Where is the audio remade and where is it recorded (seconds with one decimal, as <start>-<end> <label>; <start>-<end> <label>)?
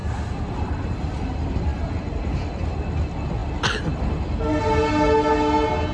0.0-5.9 recorded